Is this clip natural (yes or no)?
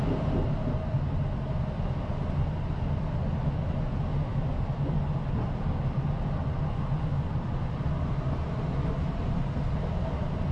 yes